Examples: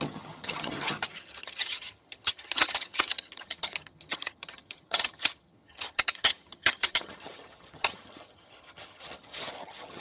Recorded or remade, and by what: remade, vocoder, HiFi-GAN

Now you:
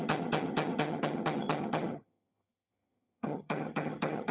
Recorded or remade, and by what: remade, vocoder, HiFi-GAN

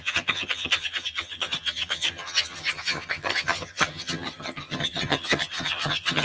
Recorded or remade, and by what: remade, vocoder, HiFi-GAN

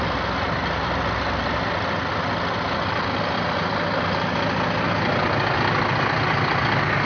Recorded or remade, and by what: recorded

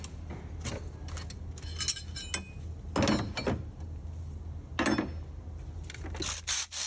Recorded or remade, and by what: recorded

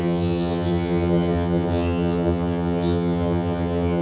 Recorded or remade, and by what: remade, vocoder, HiFi-GAN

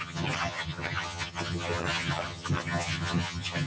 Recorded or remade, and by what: remade, vocoder, HiFi-GAN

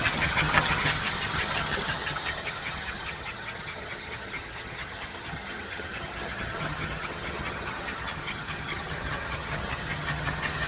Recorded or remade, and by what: remade, vocoder, HiFi-GAN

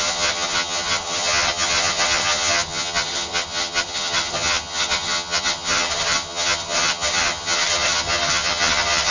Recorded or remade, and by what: remade, vocoder, HiFi-GAN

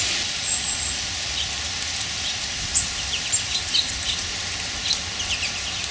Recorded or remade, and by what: recorded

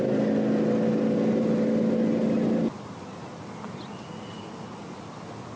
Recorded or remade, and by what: recorded